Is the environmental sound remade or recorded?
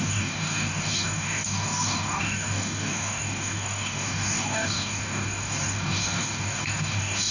remade